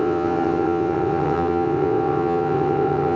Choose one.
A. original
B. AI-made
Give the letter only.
B